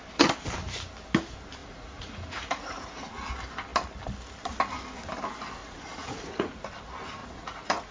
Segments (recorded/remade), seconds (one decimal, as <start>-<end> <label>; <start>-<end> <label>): 0.0-1.6 recorded; 1.6-3.0 remade; 3.0-5.6 recorded; 5.6-6.6 remade; 6.6-7.2 recorded; 7.2-7.9 remade